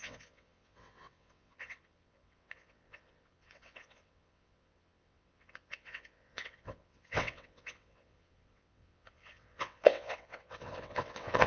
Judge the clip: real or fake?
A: fake